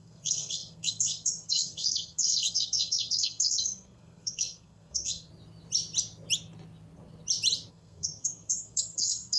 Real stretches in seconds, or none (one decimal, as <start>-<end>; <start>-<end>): 5.3-7.7